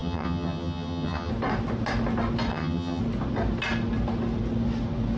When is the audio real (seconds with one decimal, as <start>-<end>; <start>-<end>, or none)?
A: 1.3-2.5; 3.0-5.2